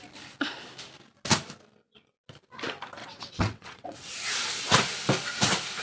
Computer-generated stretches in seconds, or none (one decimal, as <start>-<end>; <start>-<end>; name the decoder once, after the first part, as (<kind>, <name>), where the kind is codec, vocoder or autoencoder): 3.0-4.1 (vocoder, WaveNeXt)